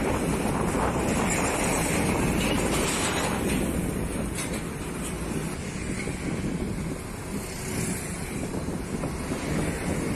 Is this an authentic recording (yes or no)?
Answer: yes